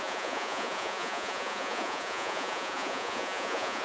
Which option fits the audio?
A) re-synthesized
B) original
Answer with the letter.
A